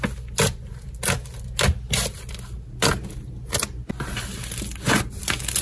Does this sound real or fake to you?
real